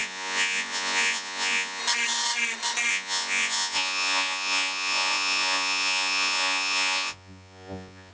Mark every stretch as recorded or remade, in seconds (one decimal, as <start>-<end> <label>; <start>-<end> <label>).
0.0-1.8 remade; 1.8-2.9 recorded; 2.9-8.1 remade